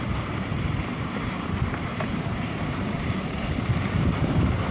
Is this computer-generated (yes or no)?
yes